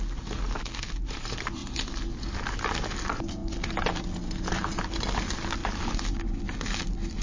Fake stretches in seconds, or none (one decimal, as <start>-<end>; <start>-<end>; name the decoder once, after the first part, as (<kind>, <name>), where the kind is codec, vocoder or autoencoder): 3.4-4.0 (vocoder, BigVGAN v2)